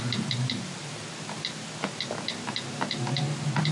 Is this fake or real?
real